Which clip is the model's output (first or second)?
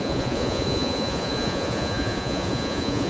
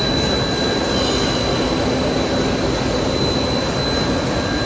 first